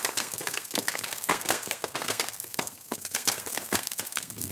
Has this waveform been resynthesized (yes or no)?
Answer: yes